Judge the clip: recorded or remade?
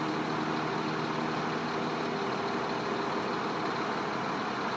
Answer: recorded